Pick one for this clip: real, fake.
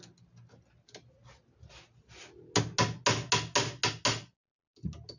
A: real